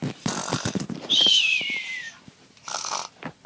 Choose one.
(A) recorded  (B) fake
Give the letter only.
A